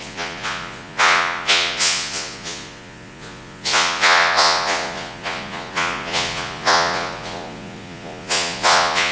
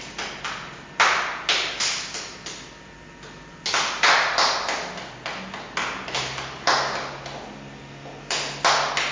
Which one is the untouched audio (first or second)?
second